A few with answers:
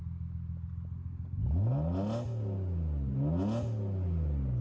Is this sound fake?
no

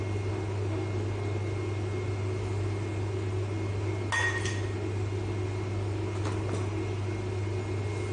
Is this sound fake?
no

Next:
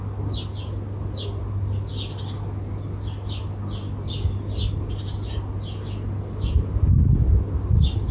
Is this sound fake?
no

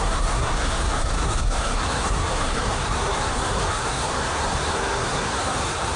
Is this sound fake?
yes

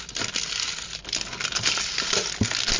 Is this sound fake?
no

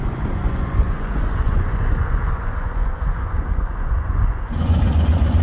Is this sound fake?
yes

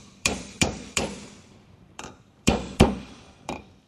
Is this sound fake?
yes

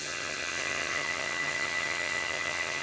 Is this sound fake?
yes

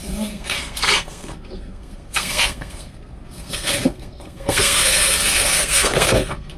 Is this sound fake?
yes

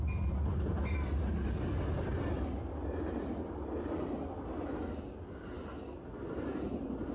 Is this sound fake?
no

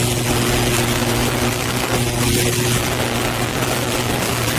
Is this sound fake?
no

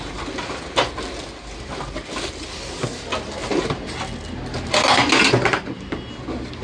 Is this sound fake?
no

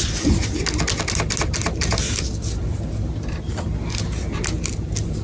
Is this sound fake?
no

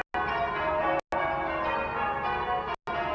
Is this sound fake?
no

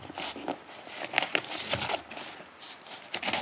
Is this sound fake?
no